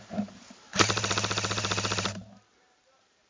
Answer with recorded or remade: remade